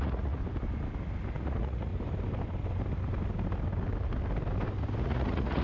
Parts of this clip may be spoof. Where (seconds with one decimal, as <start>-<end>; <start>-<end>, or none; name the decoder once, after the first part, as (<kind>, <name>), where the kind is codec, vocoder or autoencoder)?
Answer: 0.0-0.4 (vocoder, Vocos); 1.3-1.9; 5.0-5.6